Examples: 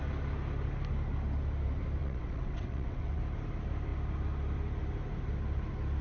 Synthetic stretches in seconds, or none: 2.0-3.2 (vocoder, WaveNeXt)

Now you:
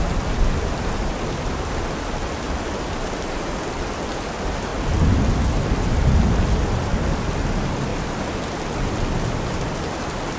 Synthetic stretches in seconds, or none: none

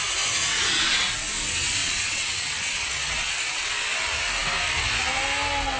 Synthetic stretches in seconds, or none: 1.8-3.7 (vocoder, WaveNeXt)

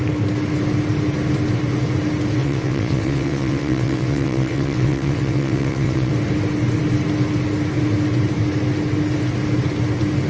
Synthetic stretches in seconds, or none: 2.4-6.1 (vocoder, WaveNeXt)

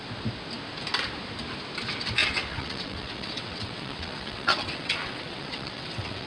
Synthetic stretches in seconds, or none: 2.2-6.3 (vocoder, WaveNeXt)